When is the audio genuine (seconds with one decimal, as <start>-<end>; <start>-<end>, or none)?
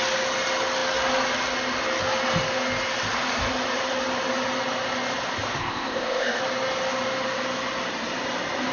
0.0-5.6; 6.4-8.7